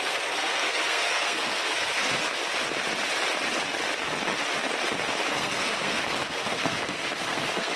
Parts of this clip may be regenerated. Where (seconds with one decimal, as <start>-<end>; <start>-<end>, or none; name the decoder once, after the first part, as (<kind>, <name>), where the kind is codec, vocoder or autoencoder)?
0.0-2.0 (codec, SNAC); 5.3-7.8